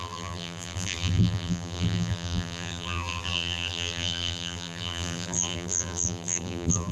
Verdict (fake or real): fake